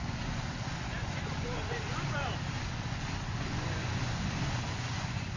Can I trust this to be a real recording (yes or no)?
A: no